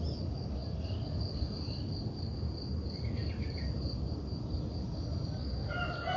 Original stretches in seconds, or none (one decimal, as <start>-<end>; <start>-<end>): 0.0-6.2